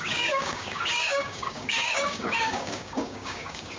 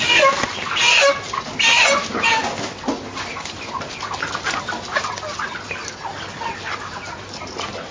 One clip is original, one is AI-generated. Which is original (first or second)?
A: second